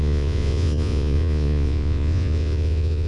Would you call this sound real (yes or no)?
no